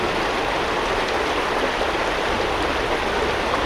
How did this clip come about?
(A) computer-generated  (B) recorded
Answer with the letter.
B